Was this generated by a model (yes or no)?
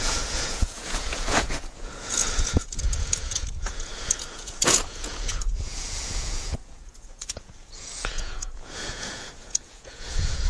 yes